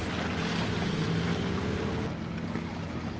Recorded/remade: recorded